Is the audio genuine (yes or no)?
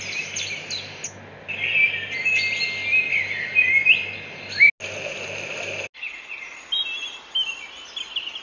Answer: yes